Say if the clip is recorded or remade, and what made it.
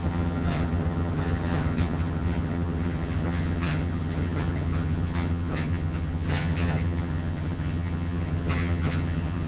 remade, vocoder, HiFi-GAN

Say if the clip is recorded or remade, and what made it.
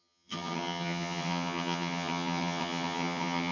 remade, vocoder, HiFi-GAN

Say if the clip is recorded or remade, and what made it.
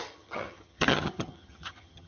remade, vocoder, HiFi-GAN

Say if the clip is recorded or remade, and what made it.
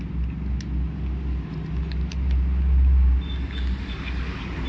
recorded